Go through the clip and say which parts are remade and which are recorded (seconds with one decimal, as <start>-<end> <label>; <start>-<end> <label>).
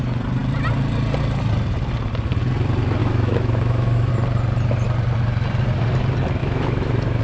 0.0-3.0 recorded; 3.0-4.1 remade; 4.1-6.4 recorded; 6.4-7.2 remade